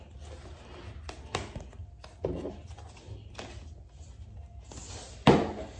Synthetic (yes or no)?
no